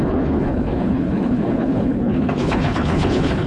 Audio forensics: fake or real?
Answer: fake